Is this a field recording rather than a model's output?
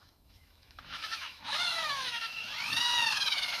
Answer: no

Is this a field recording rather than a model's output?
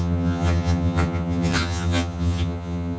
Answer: no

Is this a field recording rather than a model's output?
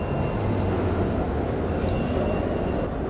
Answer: yes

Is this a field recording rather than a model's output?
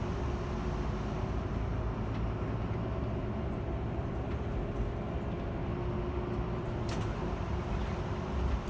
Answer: yes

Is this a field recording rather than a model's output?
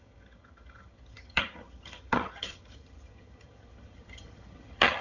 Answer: no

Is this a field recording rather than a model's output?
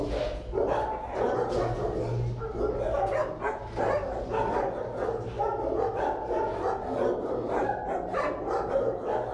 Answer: yes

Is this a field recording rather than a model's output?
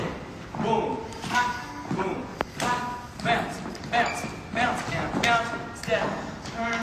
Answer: yes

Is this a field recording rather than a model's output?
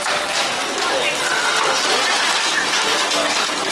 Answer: yes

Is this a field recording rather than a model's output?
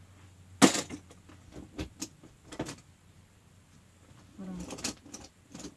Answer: yes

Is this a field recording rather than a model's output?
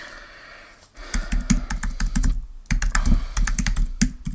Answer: yes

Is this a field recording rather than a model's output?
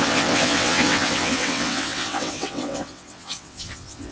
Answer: no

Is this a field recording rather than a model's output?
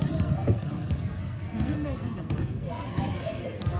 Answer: no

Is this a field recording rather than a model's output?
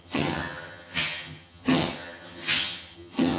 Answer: no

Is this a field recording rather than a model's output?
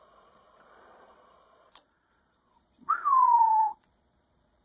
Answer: no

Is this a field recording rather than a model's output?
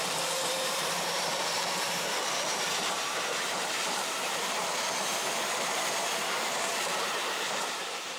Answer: no